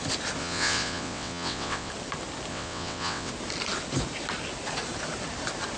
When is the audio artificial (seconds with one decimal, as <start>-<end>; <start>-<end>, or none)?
0.4-1.9; 2.5-3.3